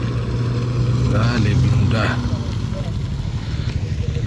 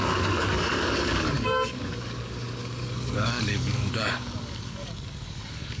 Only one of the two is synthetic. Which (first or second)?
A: second